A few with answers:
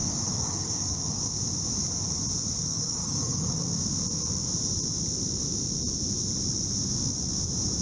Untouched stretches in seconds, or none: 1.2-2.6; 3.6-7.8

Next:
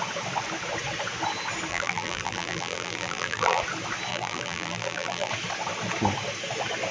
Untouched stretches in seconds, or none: 0.0-1.7; 3.6-4.1; 5.3-6.9